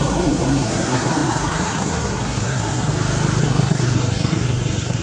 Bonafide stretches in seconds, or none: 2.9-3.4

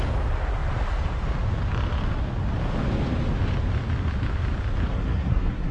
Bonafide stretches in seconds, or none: 0.0-4.9

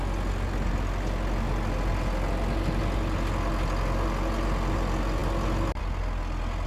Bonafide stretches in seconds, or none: 0.0-6.7

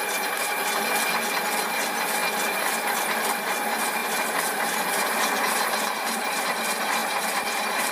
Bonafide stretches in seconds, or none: 0.6-1.6; 2.2-3.3